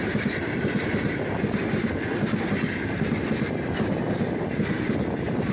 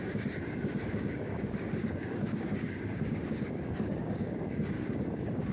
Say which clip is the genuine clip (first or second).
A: first